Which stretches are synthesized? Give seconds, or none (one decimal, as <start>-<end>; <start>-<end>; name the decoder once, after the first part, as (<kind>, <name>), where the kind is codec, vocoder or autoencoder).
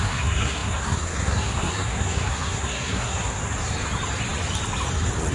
0.0-3.4 (codec, SNAC)